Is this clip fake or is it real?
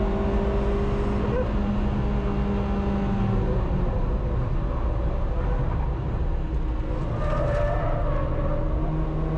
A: real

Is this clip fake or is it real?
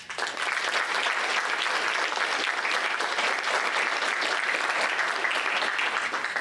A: real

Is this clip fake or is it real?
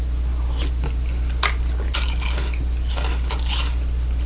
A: real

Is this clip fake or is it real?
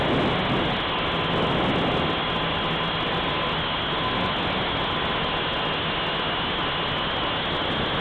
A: real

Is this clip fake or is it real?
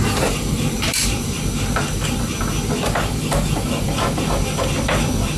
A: fake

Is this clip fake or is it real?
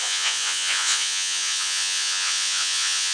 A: fake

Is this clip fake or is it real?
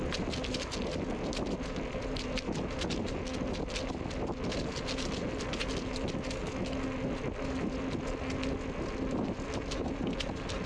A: real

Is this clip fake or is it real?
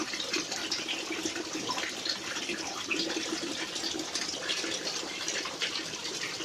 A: fake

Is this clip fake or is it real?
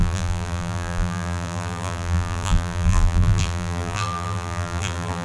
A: fake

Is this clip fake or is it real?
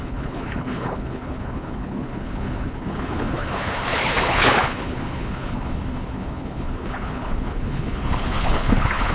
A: fake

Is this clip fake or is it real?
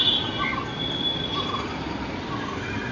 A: real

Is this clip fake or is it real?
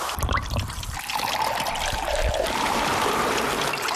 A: fake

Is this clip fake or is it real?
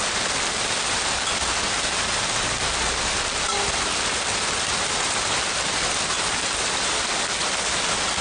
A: real